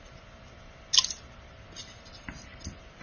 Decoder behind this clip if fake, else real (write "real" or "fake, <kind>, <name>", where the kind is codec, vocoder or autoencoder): real